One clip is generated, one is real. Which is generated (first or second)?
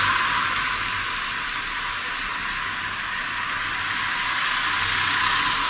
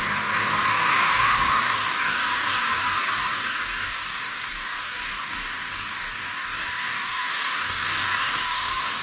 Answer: second